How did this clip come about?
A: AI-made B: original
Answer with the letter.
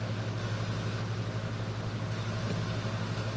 B